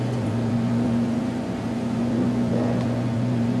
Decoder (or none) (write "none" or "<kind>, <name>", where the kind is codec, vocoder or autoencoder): vocoder, Vocos